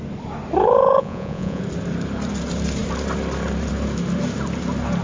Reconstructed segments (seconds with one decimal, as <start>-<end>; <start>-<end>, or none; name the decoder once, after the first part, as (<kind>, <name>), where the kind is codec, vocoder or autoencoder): 0.6-1.6 (vocoder, Vocos)